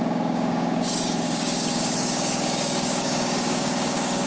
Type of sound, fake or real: fake